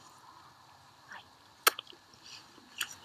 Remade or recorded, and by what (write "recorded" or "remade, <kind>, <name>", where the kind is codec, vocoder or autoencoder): recorded